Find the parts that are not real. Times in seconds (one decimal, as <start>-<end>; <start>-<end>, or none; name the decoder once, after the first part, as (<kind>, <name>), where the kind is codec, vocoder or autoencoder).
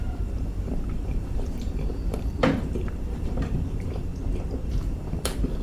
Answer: 0.0-4.1 (vocoder, BigVGAN v2); 4.7-5.6